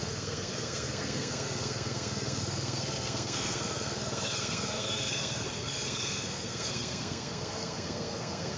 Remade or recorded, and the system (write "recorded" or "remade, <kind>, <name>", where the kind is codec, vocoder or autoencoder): remade, codec, SNAC